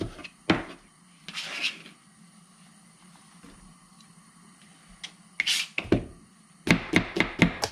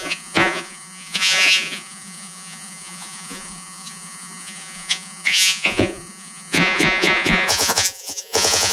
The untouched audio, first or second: first